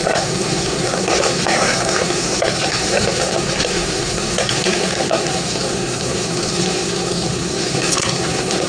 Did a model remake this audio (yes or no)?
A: yes